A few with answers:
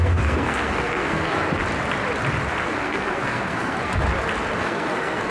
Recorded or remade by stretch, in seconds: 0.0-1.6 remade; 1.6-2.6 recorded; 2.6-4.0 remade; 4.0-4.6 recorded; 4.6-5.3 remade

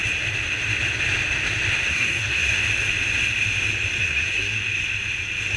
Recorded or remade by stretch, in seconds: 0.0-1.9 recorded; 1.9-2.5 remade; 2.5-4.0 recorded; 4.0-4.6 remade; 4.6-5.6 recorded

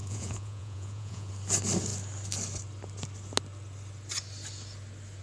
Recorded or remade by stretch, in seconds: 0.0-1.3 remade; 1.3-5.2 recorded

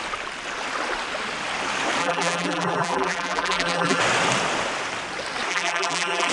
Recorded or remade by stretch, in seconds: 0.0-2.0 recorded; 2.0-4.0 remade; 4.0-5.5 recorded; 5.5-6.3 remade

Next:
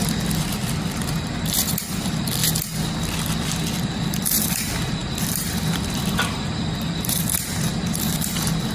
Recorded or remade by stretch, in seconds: 0.0-2.4 remade; 2.4-4.0 recorded; 4.0-8.7 remade

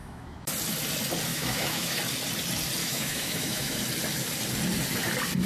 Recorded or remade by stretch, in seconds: 0.0-0.5 remade; 0.5-1.3 recorded; 1.3-2.0 remade; 2.0-2.8 recorded; 2.8-3.8 remade; 3.8-5.5 recorded